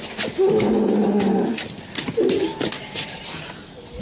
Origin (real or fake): real